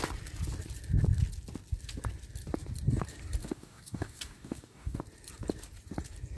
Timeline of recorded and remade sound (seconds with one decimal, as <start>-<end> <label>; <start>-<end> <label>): 0.0-3.4 recorded; 3.4-5.0 remade; 5.0-6.4 recorded